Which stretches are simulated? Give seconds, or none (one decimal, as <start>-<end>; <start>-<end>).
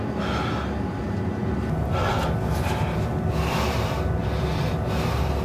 none